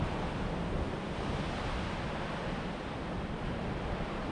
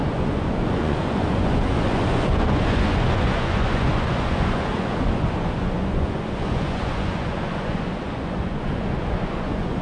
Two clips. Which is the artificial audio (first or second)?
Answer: second